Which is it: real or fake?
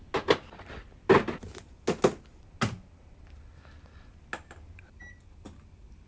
real